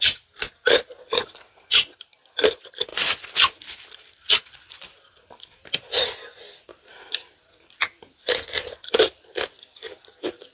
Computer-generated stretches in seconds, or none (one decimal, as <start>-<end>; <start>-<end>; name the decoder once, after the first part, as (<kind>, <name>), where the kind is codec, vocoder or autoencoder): none